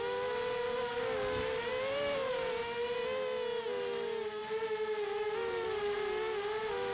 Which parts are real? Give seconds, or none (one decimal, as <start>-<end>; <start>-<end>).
0.0-1.7; 2.5-4.4; 6.1-6.9